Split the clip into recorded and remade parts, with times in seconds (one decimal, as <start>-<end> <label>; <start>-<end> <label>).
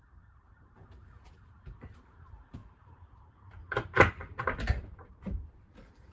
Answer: 0.0-6.1 remade